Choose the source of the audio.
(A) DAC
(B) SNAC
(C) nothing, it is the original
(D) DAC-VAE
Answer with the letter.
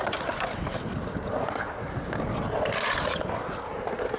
C